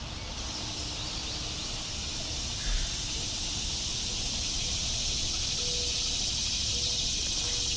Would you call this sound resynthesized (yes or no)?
no